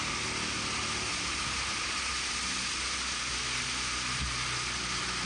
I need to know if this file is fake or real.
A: real